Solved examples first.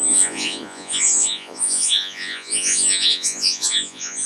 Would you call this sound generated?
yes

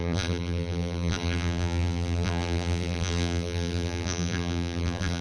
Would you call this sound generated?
yes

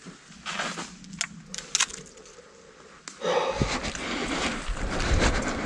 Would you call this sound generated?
no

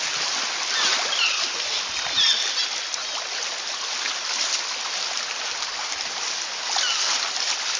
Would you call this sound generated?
no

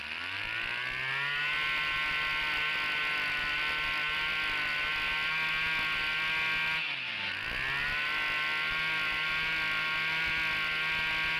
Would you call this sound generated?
no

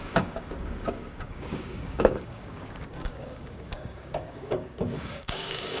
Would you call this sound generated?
yes